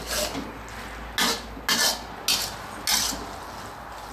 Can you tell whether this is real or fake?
real